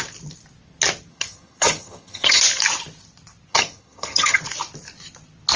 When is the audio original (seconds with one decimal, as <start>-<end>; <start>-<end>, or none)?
0.0-1.1; 2.4-3.5; 4.4-5.6